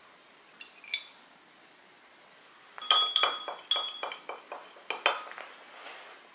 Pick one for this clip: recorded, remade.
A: recorded